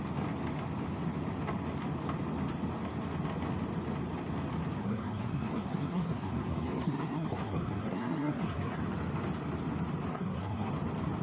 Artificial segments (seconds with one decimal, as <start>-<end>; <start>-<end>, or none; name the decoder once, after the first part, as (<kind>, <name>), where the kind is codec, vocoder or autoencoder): 4.8-8.8 (codec, SNAC); 10.1-10.7